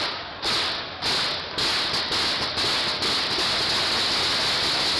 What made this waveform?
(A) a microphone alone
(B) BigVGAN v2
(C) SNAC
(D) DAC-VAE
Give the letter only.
A